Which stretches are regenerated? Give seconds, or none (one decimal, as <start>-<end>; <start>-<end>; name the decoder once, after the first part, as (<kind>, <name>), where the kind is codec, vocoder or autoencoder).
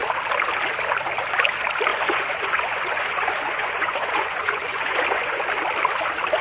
1.9-5.5 (vocoder, Vocos)